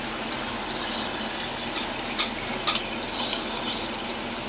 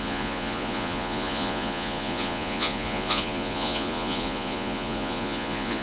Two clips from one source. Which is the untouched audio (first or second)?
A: first